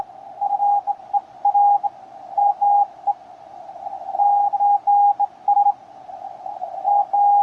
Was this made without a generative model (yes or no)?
yes